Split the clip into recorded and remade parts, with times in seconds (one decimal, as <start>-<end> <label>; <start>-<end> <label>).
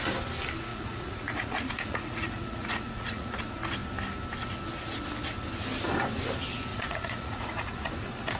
0.0-0.7 recorded; 0.7-3.4 remade; 3.4-6.7 recorded; 6.7-7.9 remade; 7.9-8.4 recorded